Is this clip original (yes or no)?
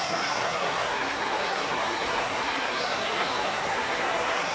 no